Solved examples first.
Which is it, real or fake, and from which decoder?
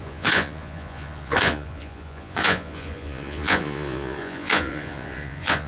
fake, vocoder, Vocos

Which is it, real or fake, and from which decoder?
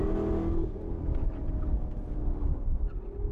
real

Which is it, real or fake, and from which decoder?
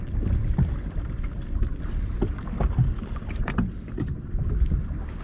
real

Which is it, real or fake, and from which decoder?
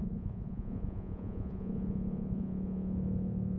fake, vocoder, Vocos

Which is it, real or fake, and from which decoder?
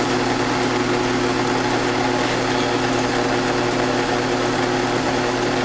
real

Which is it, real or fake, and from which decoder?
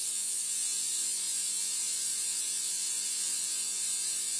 fake, vocoder, Vocos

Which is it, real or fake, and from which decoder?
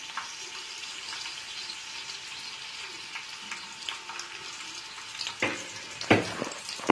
real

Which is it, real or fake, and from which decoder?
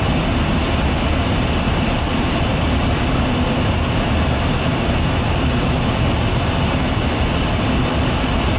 real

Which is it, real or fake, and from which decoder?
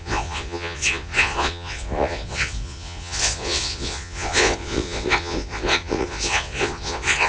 fake, vocoder, Vocos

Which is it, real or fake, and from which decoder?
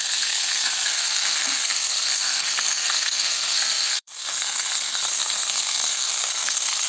fake, codec, SNAC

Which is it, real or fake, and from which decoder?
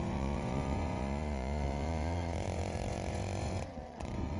fake, vocoder, Vocos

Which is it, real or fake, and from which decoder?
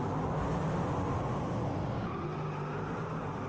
real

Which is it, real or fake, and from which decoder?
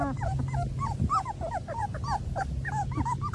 real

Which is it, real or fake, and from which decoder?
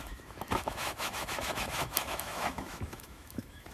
fake, autoencoder, DAC-VAE